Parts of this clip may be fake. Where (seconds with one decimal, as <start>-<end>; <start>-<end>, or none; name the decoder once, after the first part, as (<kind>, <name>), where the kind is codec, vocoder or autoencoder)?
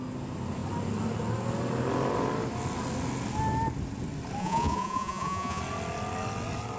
4.4-5.6 (vocoder, Vocos)